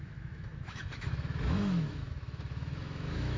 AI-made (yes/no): yes